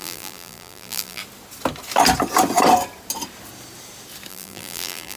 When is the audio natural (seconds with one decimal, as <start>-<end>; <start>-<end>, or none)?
1.2-4.3